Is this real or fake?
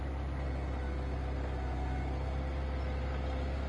real